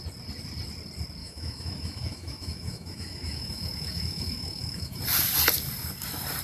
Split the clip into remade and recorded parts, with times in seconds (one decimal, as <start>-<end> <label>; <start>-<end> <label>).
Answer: 0.0-1.2 recorded; 1.2-5.0 remade; 5.0-6.4 recorded